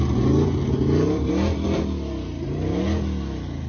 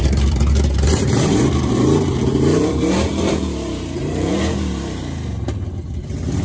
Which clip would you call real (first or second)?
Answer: first